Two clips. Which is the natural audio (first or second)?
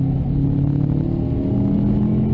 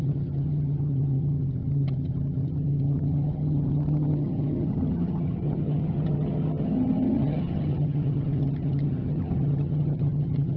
first